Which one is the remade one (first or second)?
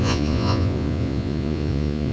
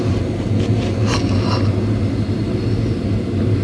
first